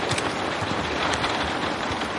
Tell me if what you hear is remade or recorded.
remade